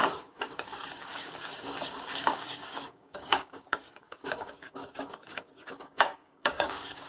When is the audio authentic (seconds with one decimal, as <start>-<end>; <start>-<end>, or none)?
none